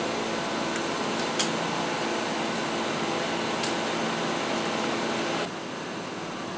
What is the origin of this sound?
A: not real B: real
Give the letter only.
B